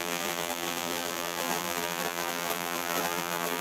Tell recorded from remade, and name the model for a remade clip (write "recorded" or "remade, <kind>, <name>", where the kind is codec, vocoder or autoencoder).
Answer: remade, vocoder, BigVGAN v2